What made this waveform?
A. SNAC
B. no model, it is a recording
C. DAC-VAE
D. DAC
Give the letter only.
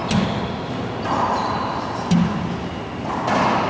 B